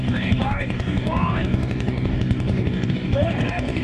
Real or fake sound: fake